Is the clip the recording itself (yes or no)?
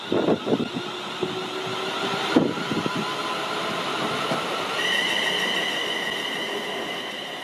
yes